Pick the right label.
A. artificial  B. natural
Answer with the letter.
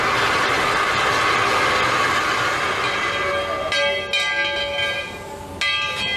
B